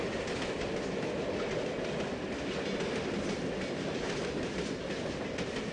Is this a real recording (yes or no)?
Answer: yes